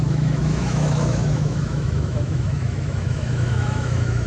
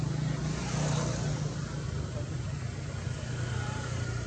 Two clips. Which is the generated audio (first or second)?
first